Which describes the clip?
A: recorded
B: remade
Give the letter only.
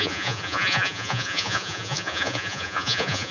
B